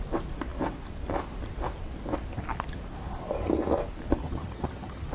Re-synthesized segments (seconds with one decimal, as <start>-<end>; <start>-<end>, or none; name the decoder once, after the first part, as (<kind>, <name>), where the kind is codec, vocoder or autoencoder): 4.2-5.1 (vocoder, HiFi-GAN)